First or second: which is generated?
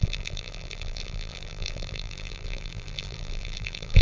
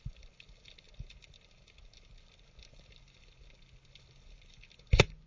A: first